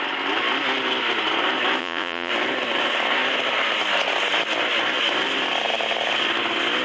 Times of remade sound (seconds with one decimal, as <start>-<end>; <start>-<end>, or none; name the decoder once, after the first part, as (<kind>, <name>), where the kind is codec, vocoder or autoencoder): 1.8-2.3 (vocoder, Vocos)